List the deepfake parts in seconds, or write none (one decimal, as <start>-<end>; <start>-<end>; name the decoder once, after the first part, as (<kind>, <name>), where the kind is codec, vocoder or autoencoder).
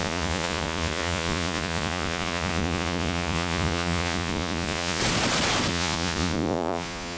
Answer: 0.0-5.0 (vocoder, Vocos); 5.7-7.2